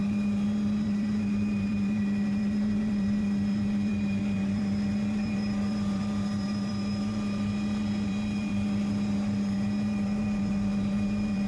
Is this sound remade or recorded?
remade